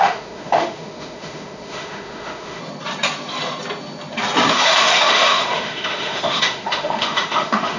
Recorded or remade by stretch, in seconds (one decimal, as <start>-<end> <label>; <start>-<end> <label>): 0.0-2.6 remade; 2.6-4.5 recorded; 4.5-7.8 remade